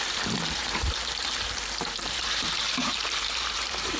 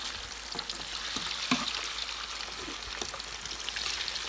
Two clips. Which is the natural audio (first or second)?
second